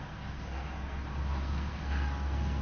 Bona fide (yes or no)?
no